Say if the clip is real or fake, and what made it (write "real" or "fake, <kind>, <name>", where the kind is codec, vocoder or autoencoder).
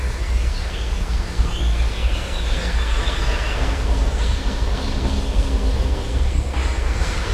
fake, codec, SNAC